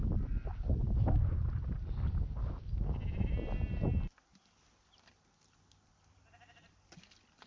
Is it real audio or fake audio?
real